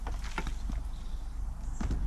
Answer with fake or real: real